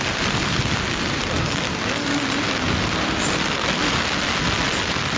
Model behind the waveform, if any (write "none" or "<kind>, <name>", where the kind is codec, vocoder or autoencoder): none